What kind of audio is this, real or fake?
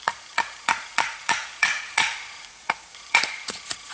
fake